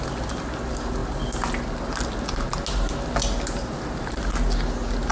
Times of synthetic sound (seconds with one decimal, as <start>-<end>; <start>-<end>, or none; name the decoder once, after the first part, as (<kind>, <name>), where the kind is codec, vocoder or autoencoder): none